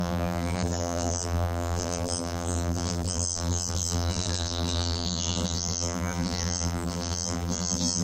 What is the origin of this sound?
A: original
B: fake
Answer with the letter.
B